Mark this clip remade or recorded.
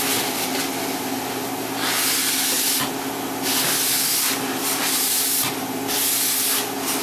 recorded